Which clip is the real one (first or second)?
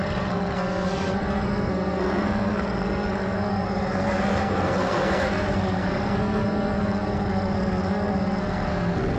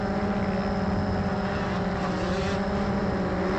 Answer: second